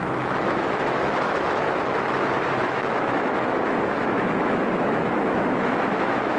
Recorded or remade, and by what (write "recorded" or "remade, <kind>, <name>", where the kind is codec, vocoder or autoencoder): remade, autoencoder, DAC-VAE